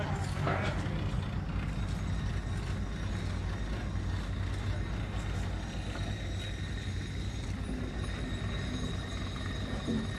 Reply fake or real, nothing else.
real